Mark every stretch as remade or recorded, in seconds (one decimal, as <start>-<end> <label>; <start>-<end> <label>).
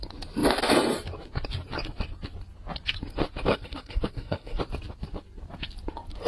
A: 0.0-3.5 recorded; 3.5-4.6 remade; 4.6-6.3 recorded